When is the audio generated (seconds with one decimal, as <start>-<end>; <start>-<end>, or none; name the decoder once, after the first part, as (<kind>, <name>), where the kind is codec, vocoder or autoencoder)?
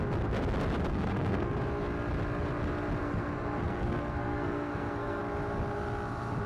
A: 0.9-1.5 (codec, SNAC); 3.0-5.2